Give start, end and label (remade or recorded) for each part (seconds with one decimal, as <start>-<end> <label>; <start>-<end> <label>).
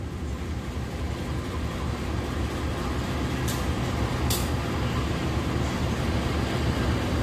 0.0-7.2 recorded